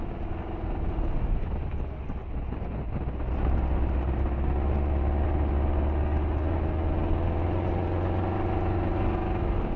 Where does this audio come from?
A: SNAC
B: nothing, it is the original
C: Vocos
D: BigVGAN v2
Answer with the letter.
B